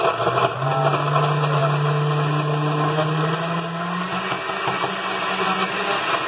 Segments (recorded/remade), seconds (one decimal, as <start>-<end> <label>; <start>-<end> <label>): 0.0-6.3 recorded